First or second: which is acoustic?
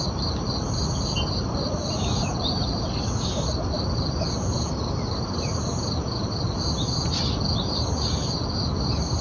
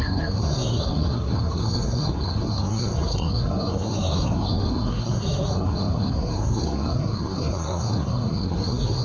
first